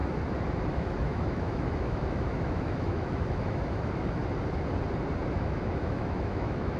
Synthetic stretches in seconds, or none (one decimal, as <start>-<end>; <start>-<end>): 0.7-4.2; 5.3-6.8